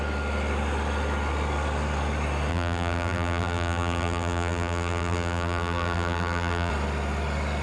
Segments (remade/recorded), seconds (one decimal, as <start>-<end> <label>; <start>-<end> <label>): 0.0-2.5 recorded; 2.5-6.7 remade; 6.7-7.6 recorded